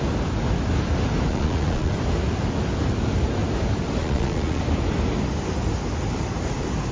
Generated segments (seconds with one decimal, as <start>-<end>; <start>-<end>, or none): 1.3-1.9; 4.0-4.6